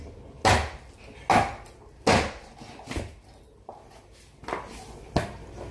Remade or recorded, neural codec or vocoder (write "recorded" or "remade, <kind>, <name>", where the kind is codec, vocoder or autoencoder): recorded